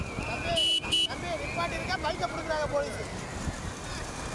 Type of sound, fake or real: real